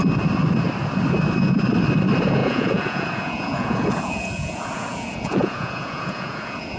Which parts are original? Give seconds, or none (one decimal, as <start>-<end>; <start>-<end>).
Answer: 0.0-2.4